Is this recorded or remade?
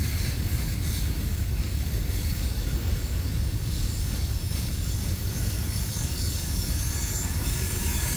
remade